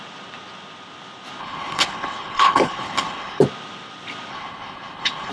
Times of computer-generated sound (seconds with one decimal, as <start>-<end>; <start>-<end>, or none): 1.4-3.4; 4.3-5.3